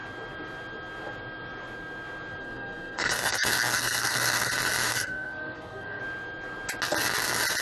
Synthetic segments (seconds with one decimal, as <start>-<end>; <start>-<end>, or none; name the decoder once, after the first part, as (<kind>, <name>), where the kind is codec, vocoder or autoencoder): 2.4-4.5 (codec, SNAC); 4.9-6.0